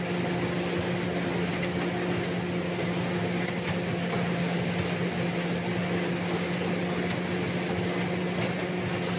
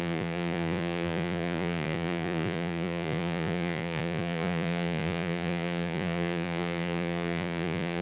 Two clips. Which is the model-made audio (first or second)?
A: second